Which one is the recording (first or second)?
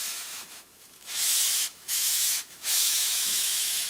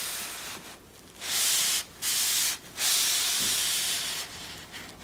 second